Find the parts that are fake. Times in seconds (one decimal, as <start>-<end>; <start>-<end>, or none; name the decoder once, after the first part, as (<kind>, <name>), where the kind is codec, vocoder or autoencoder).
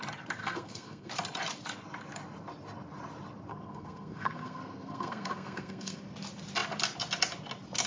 0.4-1.1 (codec, SNAC); 3.5-6.0